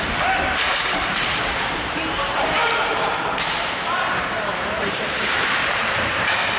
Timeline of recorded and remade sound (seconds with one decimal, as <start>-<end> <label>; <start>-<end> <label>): 0.0-6.6 remade